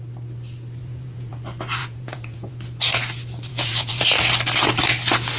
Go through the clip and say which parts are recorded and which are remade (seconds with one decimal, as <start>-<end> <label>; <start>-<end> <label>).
0.0-0.8 recorded; 0.8-1.3 remade; 1.3-1.8 recorded; 1.8-2.5 remade; 2.5-3.5 recorded; 3.5-4.0 remade; 4.0-5.4 recorded